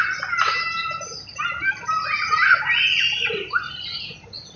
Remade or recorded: recorded